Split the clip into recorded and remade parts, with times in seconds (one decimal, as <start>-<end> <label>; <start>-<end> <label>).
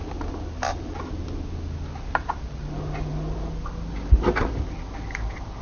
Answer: 0.0-5.6 recorded